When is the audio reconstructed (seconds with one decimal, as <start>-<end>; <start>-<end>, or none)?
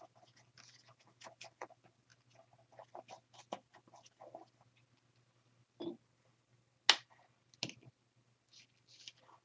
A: none